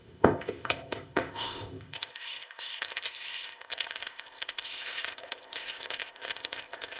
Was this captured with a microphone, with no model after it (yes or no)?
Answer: no